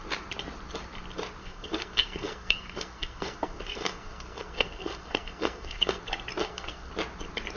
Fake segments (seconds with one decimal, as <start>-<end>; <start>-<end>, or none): 1.4-6.0; 6.4-6.9